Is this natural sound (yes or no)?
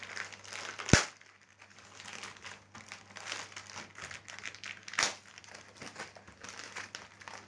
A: yes